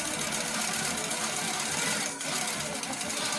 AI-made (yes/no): no